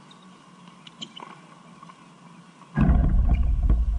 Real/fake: real